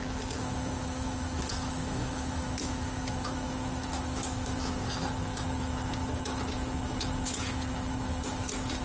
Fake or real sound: fake